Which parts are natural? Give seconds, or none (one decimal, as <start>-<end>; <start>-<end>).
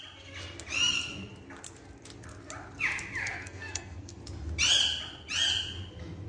0.0-3.2; 4.2-6.3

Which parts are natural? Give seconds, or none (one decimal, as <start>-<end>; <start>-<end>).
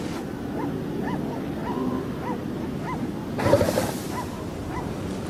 0.0-5.3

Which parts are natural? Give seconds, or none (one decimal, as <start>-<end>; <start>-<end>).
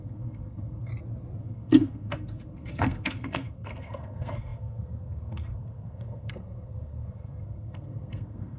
0.9-1.4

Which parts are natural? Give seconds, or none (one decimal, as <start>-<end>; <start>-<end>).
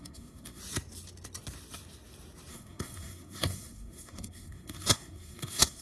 0.6-2.5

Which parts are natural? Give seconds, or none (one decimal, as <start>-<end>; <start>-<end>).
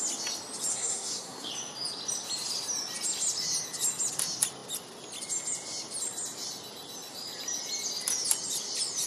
0.0-0.7; 1.5-9.1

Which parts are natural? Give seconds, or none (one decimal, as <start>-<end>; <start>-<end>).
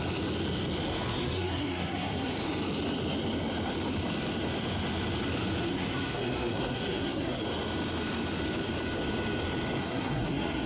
0.0-1.1; 2.3-5.7; 7.4-9.8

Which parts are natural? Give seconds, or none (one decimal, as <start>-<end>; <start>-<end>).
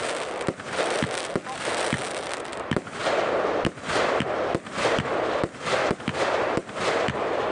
0.0-7.5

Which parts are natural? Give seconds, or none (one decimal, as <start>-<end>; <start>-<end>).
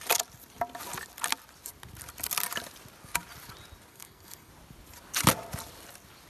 0.0-3.9; 4.5-6.3